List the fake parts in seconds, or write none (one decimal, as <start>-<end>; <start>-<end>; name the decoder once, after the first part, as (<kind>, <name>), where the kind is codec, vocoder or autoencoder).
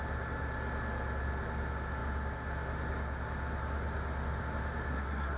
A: 4.9-5.4 (codec, SNAC)